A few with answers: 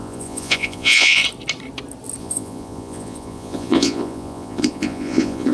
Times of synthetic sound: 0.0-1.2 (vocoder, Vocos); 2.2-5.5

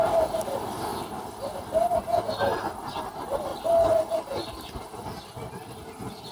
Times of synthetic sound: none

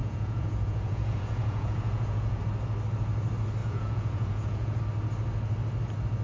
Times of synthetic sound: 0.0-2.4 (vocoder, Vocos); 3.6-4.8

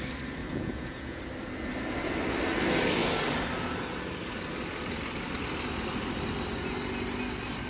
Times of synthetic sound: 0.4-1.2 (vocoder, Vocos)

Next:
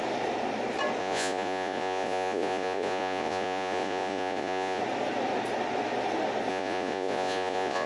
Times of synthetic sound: 1.0-4.8 (vocoder, Vocos); 6.5-7.9

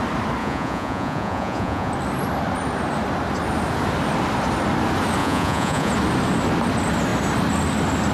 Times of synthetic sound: 0.4-1.9 (vocoder, Vocos); 5.2-5.9